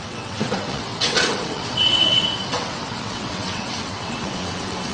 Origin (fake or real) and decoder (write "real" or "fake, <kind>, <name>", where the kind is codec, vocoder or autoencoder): fake, vocoder, WaveNeXt